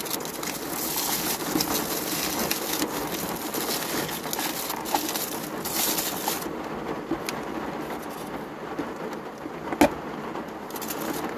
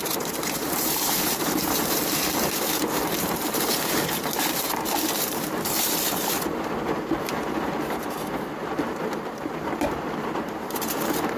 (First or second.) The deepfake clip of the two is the second